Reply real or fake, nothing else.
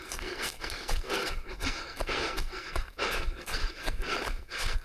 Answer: fake